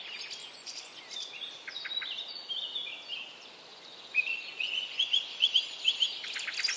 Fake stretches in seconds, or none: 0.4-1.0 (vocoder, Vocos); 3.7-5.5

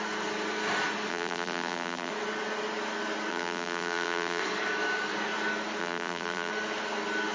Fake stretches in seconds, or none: 1.1-2.1 (vocoder, BigVGAN v2); 3.3-4.4; 5.8-6.5